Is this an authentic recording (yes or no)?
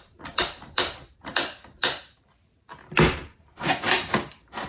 no